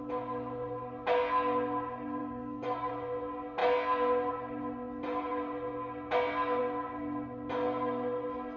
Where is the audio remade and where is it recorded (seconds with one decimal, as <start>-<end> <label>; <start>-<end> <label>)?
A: 0.0-2.2 recorded; 2.2-2.9 remade; 2.9-8.6 recorded